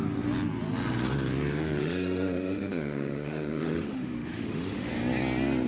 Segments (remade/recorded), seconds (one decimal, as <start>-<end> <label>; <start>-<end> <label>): 0.0-1.8 recorded; 1.8-4.9 remade; 4.9-5.7 recorded